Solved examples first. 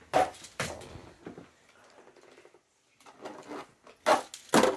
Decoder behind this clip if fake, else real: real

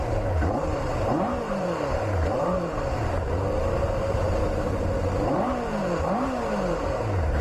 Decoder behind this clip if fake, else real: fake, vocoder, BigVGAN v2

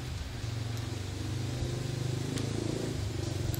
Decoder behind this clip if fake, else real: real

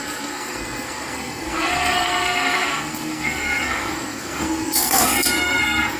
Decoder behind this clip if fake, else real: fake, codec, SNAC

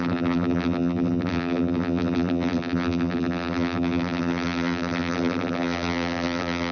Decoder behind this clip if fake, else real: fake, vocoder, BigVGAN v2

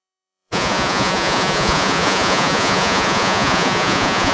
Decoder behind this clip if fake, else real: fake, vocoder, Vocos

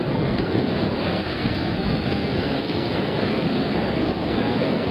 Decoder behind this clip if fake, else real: fake, codec, SNAC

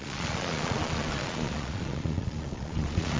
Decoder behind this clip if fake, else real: fake, vocoder, Vocos